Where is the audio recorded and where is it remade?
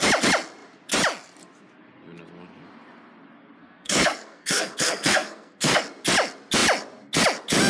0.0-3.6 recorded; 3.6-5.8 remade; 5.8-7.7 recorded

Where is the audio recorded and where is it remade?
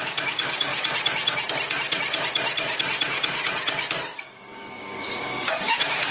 0.0-0.7 remade; 0.7-4.2 recorded; 4.2-6.1 remade